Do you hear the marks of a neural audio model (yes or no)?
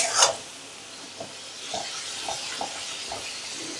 no